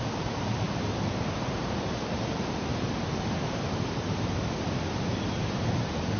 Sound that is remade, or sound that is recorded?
remade